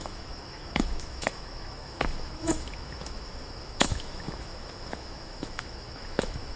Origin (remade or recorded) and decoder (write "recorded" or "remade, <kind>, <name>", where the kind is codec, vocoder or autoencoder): remade, autoencoder, DAC-VAE